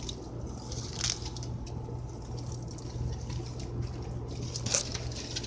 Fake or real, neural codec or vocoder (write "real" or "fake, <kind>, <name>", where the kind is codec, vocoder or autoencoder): real